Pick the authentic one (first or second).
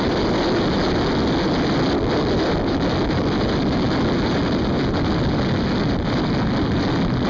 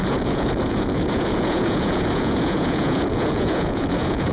first